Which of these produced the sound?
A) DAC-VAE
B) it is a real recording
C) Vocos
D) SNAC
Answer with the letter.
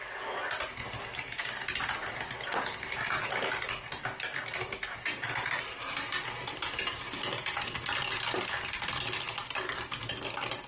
B